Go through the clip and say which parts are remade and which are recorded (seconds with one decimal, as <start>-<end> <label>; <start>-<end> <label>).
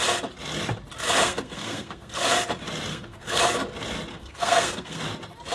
0.0-1.2 recorded; 1.2-2.2 remade; 2.2-2.9 recorded; 2.9-3.4 remade; 3.4-4.1 recorded; 4.1-5.0 remade; 5.0-5.5 recorded